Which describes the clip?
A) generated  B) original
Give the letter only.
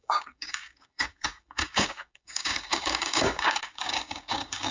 A